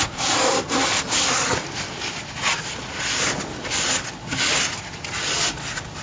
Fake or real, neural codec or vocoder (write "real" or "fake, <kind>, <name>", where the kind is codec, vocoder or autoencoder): real